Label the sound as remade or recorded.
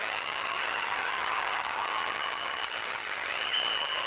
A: remade